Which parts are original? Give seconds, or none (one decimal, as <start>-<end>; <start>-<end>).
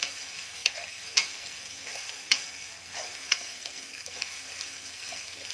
none